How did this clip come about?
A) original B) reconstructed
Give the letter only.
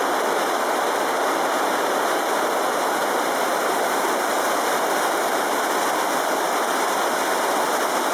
A